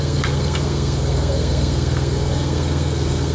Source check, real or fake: fake